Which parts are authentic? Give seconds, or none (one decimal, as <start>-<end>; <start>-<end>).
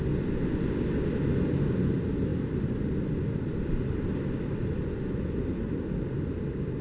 0.0-2.3; 4.7-6.8